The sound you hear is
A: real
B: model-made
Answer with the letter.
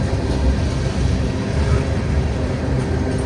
A